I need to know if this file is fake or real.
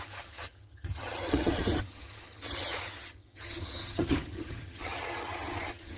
fake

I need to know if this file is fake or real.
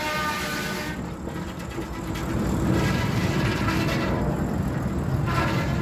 real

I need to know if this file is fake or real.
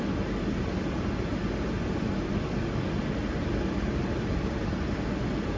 real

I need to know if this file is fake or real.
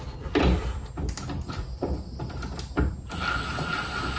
real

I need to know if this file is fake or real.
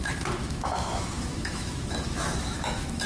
fake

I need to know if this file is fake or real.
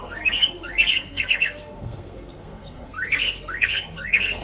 fake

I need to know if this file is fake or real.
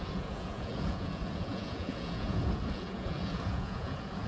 fake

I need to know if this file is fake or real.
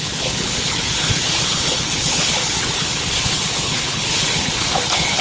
fake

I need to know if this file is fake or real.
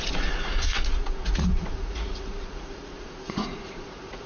fake